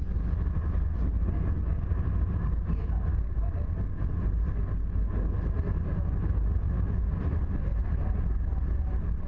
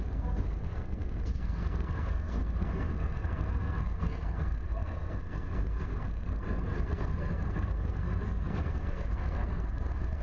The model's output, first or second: second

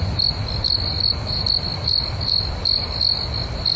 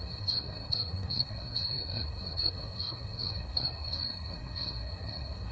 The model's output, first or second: second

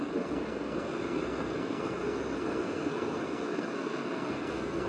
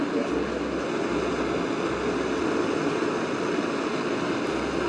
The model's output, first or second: first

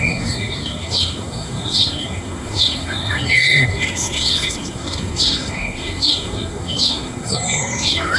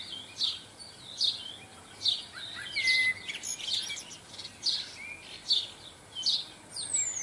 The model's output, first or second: first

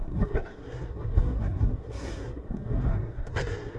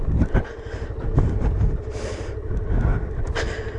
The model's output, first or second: first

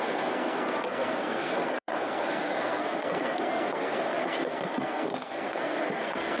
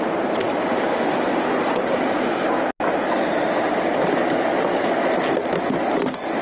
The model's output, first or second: first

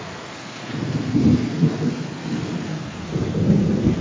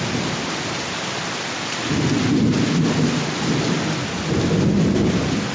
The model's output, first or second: first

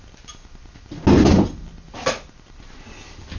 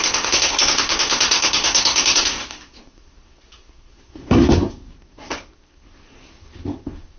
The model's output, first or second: second